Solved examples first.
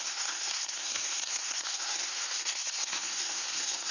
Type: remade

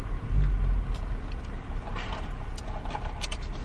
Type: recorded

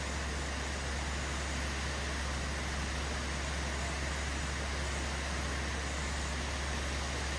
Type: recorded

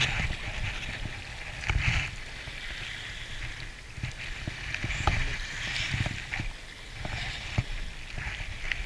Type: recorded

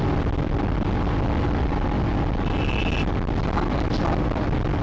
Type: recorded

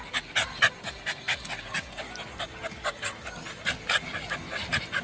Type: recorded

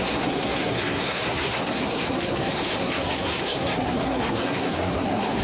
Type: remade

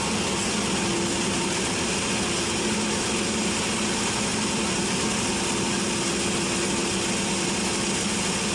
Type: recorded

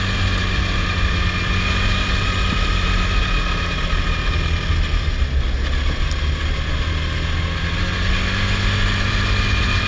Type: recorded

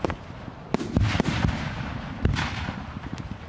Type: recorded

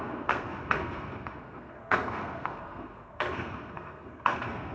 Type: remade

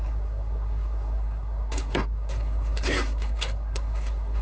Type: remade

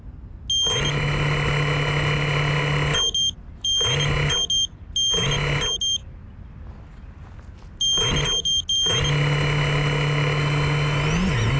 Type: recorded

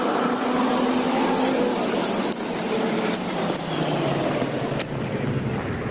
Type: recorded